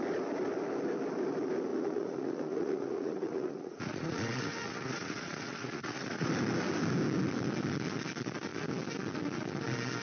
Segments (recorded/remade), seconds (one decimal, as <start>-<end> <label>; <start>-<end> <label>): 0.0-1.7 recorded; 1.7-6.3 remade; 6.3-10.0 recorded